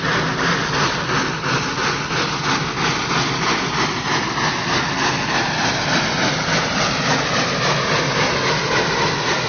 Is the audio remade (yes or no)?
no